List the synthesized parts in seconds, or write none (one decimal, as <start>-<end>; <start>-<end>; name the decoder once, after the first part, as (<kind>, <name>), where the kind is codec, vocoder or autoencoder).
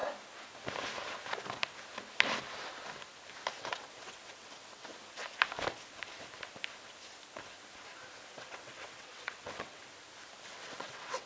3.6-4.9 (vocoder, WaveNeXt); 8.3-9.8; 10.5-11.3